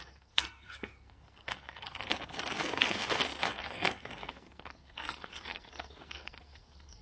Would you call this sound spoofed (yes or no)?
yes